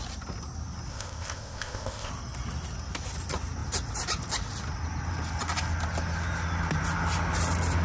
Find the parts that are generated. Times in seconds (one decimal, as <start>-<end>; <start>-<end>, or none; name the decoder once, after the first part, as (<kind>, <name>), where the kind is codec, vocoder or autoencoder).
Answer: 0.9-2.1 (codec, ZipCodec)